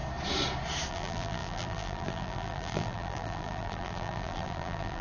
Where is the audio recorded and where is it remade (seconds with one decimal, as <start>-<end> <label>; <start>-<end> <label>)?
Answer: 0.0-0.9 recorded; 0.9-5.0 remade